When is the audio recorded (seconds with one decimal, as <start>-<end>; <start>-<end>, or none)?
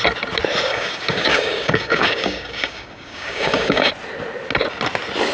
0.0-0.7; 3.9-5.3